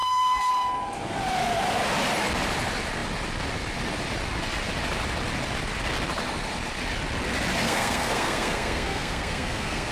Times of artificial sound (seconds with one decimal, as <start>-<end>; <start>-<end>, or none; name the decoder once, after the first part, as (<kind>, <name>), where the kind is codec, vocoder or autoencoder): 0.0-0.5 (codec, SNAC); 7.6-9.9

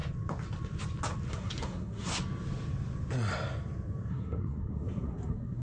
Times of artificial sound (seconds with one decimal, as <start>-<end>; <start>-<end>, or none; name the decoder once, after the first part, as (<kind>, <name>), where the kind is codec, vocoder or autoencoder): 1.3-2.1 (codec, SNAC); 4.1-5.6

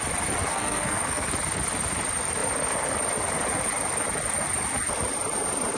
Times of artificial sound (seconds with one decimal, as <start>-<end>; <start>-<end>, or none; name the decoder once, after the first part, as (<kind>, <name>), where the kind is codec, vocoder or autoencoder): 0.5-1.3 (codec, SNAC)

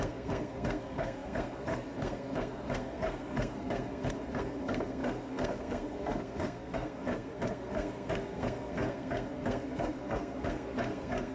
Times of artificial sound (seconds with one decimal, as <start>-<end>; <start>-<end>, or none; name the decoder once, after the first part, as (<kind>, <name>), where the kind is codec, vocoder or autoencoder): 0.0-11.3 (codec, SNAC)

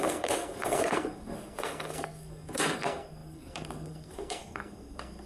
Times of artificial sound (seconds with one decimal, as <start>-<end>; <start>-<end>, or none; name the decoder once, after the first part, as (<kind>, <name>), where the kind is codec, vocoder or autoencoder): 0.0-5.3 (codec, SNAC)

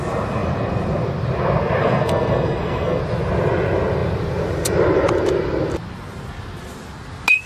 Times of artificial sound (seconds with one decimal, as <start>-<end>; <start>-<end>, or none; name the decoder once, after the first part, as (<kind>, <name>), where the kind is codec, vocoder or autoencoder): 1.8-3.0 (codec, SNAC)